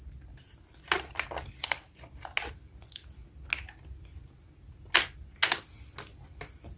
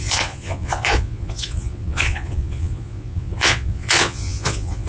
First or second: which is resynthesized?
second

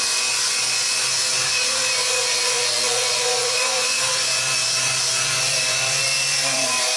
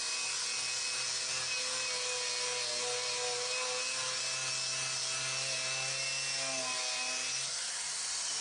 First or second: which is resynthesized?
first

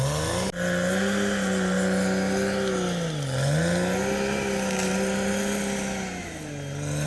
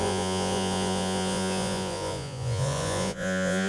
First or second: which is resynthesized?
second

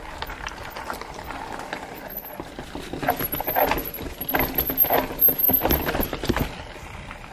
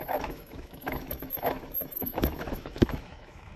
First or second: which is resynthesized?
second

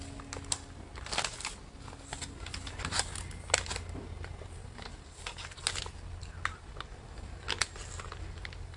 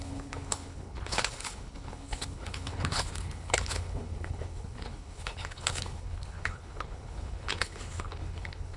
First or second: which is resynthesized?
second